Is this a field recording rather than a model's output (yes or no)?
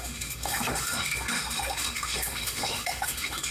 no